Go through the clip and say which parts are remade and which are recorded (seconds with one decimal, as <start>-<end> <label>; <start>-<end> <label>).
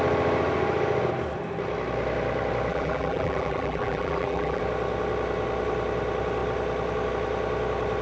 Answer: 0.0-2.7 recorded; 2.7-4.6 remade; 4.6-8.0 recorded